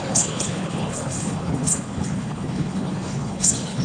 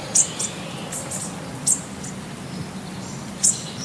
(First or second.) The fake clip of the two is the first